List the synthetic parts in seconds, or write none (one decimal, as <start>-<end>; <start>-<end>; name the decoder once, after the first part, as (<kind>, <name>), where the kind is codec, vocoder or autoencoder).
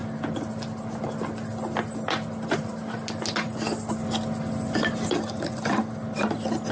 none